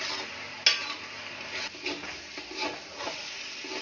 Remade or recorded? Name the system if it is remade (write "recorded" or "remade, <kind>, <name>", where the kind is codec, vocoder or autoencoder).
recorded